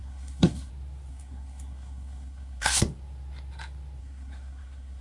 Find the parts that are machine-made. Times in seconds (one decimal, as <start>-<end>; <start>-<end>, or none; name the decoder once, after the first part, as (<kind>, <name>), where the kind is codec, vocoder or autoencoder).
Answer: 0.0-0.7 (codec, SNAC); 1.1-2.8; 4.0-5.0